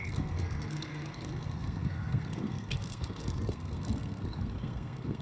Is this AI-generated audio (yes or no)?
yes